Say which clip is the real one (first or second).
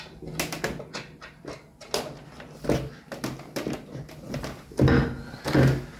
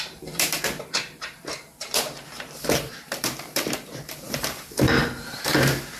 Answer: first